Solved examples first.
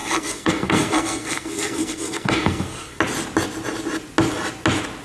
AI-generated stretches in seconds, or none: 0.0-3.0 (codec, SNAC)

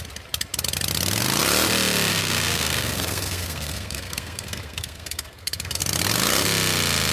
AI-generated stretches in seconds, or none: 2.1-5.8 (codec, SNAC)